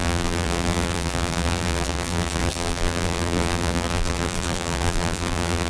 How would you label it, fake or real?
fake